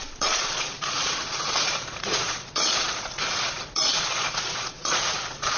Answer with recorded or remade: remade